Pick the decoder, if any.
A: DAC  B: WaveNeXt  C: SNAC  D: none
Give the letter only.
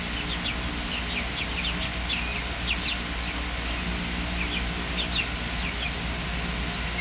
D